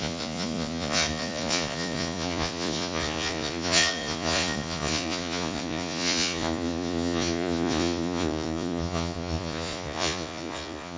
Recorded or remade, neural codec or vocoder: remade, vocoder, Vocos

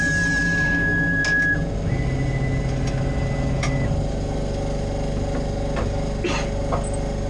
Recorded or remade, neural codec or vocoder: recorded